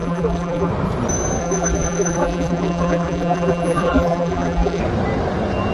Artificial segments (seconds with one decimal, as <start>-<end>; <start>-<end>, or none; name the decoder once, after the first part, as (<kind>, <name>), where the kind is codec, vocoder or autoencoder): 0.0-0.7 (vocoder, BigVGAN v2); 1.4-4.8